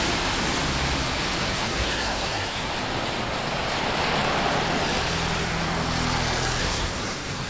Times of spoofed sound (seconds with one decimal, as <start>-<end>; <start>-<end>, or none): 1.4-2.7; 6.6-7.5